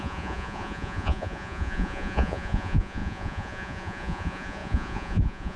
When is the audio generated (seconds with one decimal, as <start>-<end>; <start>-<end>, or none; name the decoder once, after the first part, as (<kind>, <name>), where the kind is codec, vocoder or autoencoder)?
0.0-5.6 (vocoder, Vocos)